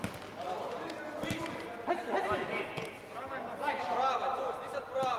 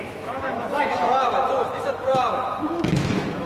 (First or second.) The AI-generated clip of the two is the second